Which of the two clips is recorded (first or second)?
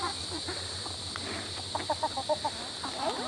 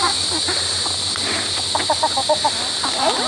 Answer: second